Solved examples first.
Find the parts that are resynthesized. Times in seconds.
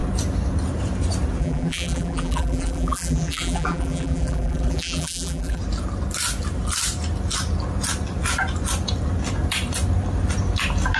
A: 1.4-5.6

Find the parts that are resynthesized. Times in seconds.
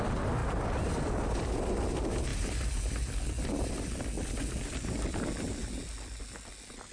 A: 0.4-1.0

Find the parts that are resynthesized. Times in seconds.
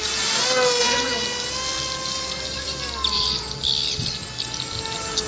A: 0.8-4.0